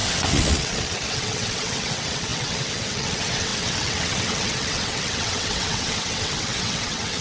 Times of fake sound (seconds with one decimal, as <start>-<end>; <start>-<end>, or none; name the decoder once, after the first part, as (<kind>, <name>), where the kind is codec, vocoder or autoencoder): 0.0-7.2 (vocoder, WaveNeXt)